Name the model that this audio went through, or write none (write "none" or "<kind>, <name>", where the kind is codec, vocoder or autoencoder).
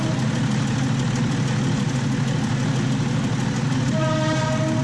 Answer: none